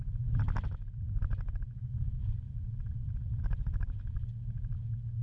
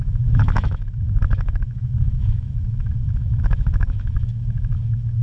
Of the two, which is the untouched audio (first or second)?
first